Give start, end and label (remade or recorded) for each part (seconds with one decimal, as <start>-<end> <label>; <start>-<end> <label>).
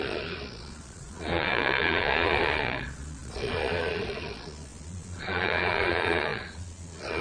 0.0-7.2 remade